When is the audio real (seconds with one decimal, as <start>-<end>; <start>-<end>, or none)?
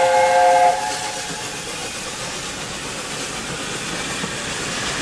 0.0-5.0